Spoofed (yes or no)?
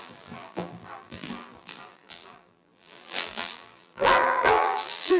yes